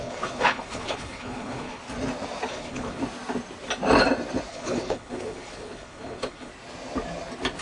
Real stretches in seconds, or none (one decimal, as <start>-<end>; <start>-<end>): 1.8-2.5; 3.0-4.5; 6.5-7.6